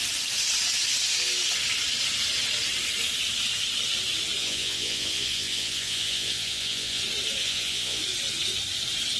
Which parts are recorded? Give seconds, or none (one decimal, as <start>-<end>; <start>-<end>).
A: 0.0-4.4; 7.0-7.4; 8.0-9.2